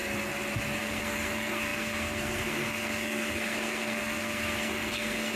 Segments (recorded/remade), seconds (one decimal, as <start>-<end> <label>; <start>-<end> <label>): 0.0-0.8 recorded; 0.8-5.4 remade